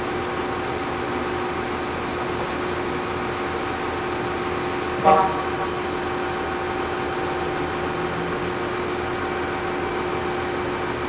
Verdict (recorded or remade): recorded